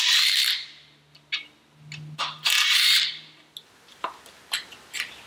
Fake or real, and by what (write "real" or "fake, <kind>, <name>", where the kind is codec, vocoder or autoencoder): real